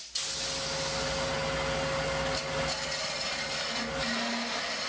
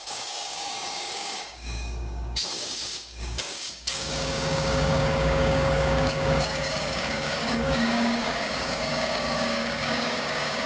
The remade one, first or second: second